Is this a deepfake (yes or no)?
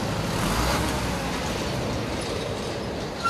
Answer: no